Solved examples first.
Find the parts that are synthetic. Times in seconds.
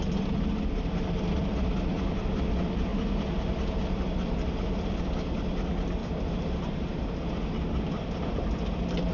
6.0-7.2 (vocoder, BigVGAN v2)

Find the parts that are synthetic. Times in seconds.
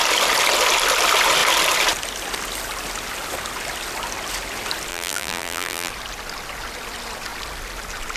4.9-5.9 (vocoder, BigVGAN v2)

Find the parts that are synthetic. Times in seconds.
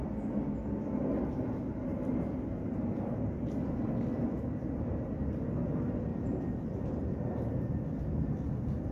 1.9-3.1 (vocoder, BigVGAN v2); 6.1-8.0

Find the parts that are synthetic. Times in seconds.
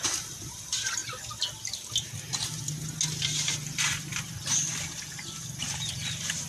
0.0-1.0 (vocoder, BigVGAN v2); 3.5-6.5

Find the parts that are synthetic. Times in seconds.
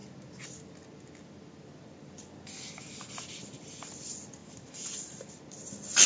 4.4-5.4 (vocoder, BigVGAN v2)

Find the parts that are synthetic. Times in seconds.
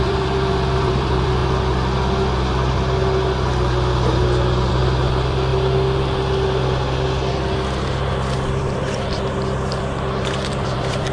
0.0-1.4 (vocoder, BigVGAN v2); 4.7-5.5; 8.5-11.1